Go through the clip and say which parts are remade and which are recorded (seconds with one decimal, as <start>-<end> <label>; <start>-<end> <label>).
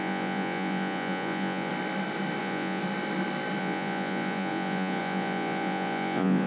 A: 0.0-1.7 remade; 1.7-2.4 recorded; 2.4-2.8 remade; 2.8-3.6 recorded; 3.6-6.5 remade